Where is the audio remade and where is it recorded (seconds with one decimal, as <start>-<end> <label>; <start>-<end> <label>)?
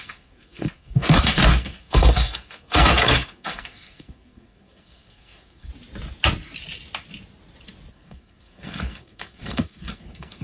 0.0-5.7 remade; 5.7-7.9 recorded; 7.9-10.4 remade